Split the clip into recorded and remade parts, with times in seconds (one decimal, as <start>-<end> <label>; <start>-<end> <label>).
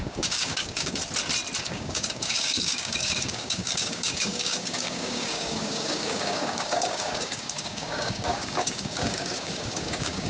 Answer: 0.0-1.0 remade; 1.0-1.6 recorded; 1.6-10.3 remade